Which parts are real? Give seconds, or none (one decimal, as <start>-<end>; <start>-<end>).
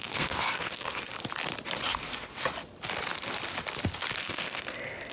1.1-4.2